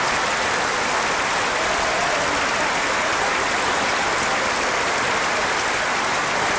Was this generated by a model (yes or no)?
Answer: no